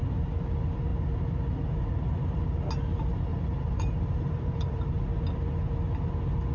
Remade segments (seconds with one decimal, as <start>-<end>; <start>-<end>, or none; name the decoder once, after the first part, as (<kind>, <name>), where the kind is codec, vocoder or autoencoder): 3.3-5.0 (vocoder, BigVGAN v2)